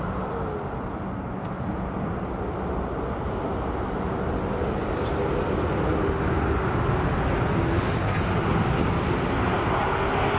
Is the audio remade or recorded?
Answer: recorded